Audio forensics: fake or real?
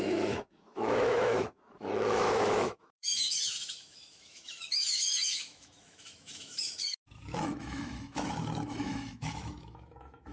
fake